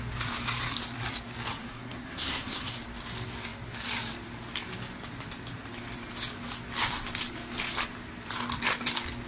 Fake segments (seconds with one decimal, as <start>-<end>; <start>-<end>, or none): 1.6-2.7